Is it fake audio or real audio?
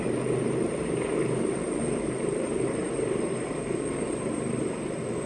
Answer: fake